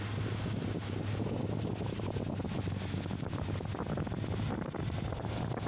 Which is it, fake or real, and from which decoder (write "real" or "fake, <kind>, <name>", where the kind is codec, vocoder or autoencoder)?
real